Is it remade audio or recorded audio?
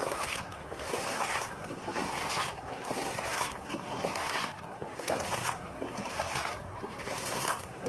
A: remade